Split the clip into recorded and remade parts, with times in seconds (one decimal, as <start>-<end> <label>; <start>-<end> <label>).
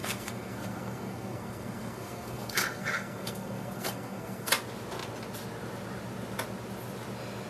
0.0-4.5 remade; 4.5-7.5 recorded